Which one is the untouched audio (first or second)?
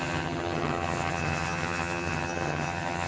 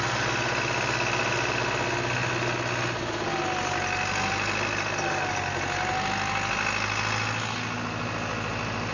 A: second